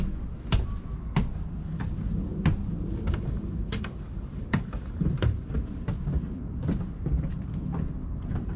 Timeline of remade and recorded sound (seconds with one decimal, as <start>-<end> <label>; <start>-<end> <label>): 0.0-3.1 recorded; 3.1-5.5 remade; 5.5-8.6 recorded